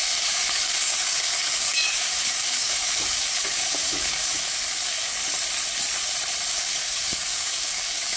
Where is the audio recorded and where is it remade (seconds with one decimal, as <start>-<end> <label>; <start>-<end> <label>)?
0.0-5.1 remade; 5.1-6.5 recorded; 6.5-8.2 remade